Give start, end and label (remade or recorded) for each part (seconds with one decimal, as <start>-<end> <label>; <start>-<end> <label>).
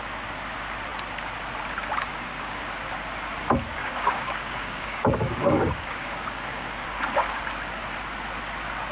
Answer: 0.0-2.1 recorded; 2.1-2.7 remade; 2.7-3.8 recorded; 3.8-7.0 remade; 7.0-8.9 recorded